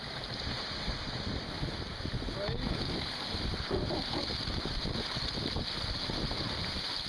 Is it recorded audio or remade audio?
recorded